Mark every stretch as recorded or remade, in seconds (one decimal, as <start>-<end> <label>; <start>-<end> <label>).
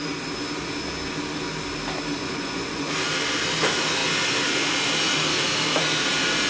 0.0-2.2 recorded; 2.2-2.9 remade; 2.9-6.5 recorded